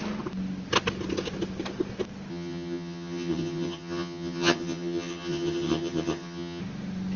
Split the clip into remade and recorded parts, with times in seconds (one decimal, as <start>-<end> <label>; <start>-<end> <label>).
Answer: 0.0-2.3 recorded; 2.3-6.6 remade; 6.6-7.2 recorded

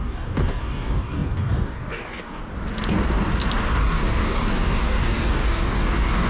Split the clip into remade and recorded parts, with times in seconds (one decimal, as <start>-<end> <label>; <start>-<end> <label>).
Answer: 0.0-2.4 remade; 2.4-3.8 recorded; 3.8-6.3 remade

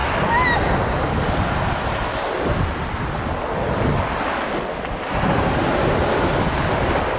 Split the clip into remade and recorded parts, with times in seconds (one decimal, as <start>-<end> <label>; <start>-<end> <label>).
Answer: 0.0-7.2 recorded

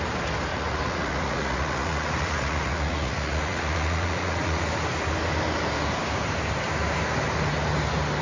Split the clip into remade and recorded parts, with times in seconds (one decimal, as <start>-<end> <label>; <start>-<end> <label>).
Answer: 0.0-0.5 recorded; 0.5-4.6 remade; 4.6-8.2 recorded